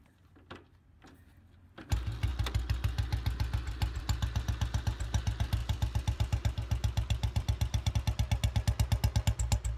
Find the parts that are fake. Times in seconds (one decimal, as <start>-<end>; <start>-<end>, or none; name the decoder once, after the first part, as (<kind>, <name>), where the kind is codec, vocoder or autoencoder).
5.6-7.9 (vocoder, BigVGAN v2)